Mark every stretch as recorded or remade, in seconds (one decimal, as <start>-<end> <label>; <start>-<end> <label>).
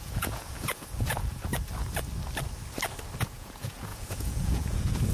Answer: 0.0-1.5 remade; 1.5-3.2 recorded; 3.2-5.1 remade